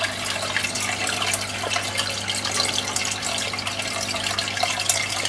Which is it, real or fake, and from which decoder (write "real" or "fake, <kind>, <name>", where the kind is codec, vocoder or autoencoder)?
real